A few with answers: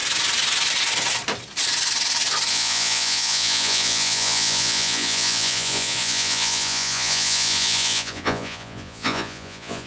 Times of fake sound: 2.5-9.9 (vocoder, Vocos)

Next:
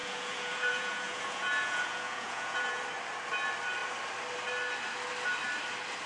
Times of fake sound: 0.0-2.8 (vocoder, Vocos)

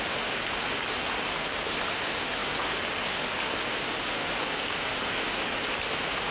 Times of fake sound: none

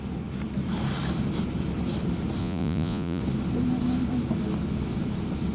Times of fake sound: 2.4-3.2 (vocoder, Vocos)

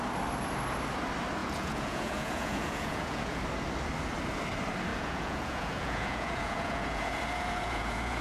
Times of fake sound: 1.4-3.4 (vocoder, Vocos); 4.9-8.2

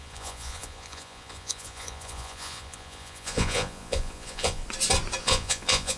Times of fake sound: 0.0-4.6 (vocoder, Vocos); 5.2-6.0

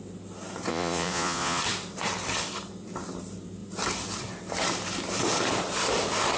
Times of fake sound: 0.7-1.6 (vocoder, Vocos)